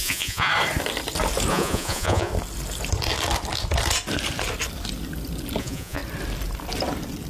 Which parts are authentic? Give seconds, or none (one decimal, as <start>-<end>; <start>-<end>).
0.5-1.5; 2.3-5.6; 6.0-7.3